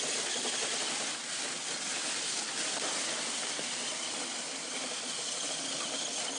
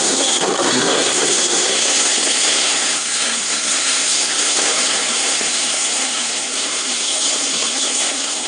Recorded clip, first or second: first